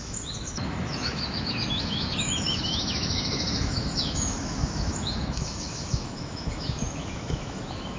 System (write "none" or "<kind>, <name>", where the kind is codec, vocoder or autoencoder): autoencoder, DAC-VAE